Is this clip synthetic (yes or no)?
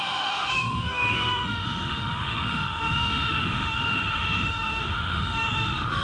yes